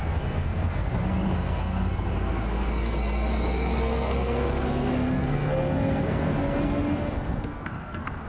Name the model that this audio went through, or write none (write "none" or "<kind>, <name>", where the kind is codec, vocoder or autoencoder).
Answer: codec, SNAC